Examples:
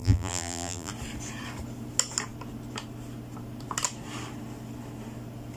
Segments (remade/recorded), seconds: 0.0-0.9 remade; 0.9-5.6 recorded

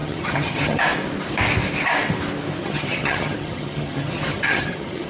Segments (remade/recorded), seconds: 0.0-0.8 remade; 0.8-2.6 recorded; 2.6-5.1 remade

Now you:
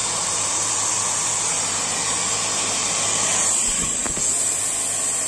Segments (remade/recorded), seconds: 0.0-0.6 remade; 0.6-2.8 recorded; 2.8-4.1 remade; 4.1-5.3 recorded

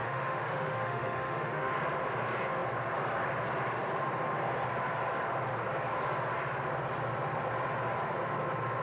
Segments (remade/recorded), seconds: 0.0-1.8 remade; 1.8-8.8 recorded